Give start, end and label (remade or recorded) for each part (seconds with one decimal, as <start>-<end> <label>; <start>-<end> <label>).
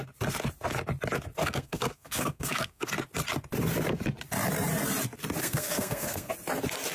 0.0-1.4 recorded; 1.4-2.9 remade; 2.9-5.4 recorded; 5.4-6.3 remade; 6.3-6.9 recorded